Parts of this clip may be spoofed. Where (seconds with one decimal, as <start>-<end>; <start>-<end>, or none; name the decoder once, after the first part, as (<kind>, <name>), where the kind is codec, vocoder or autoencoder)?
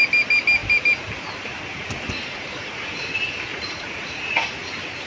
1.7-3.1 (vocoder, Vocos); 3.5-4.5